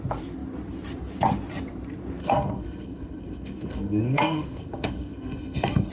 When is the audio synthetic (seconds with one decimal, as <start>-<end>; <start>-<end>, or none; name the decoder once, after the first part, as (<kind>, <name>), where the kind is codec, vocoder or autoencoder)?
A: 2.2-5.9 (codec, SNAC)